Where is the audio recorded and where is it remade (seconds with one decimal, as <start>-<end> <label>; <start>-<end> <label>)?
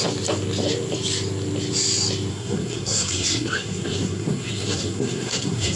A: 0.0-2.3 recorded; 2.3-5.8 remade